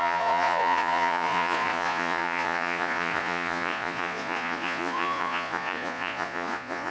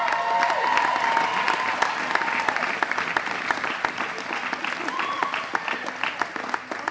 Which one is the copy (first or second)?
first